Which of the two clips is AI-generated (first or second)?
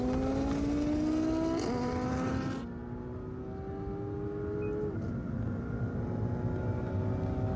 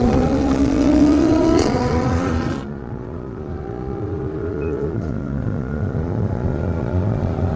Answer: second